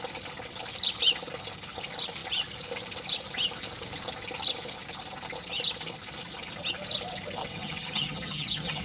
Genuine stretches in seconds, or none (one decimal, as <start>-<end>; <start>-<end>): 0.0-7.4